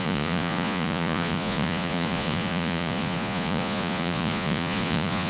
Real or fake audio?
fake